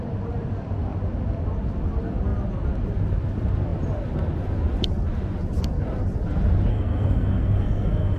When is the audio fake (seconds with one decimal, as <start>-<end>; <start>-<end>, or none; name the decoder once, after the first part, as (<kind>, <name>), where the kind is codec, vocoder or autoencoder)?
6.7-8.2 (codec, SNAC)